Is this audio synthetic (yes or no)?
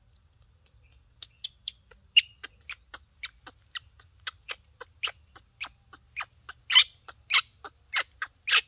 no